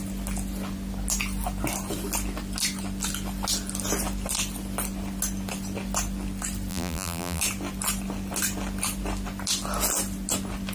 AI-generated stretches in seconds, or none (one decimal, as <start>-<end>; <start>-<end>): 6.7-7.4